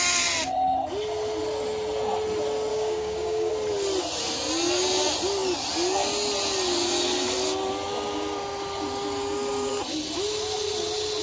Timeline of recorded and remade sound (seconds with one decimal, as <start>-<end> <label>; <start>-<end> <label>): 0.0-2.7 recorded; 2.7-3.5 remade; 3.5-11.2 recorded